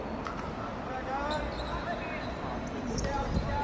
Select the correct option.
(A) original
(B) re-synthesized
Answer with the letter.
A